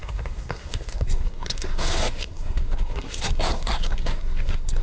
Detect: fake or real fake